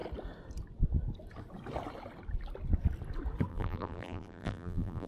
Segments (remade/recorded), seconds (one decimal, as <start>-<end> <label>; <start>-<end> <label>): 0.0-3.5 recorded; 3.5-5.1 remade